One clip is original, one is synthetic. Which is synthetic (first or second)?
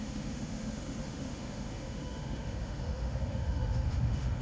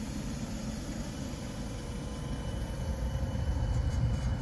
first